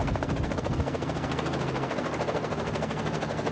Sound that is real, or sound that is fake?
fake